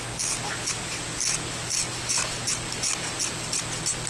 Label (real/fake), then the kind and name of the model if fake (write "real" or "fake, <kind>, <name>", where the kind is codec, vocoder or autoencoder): real